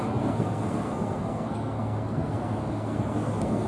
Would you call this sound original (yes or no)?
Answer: no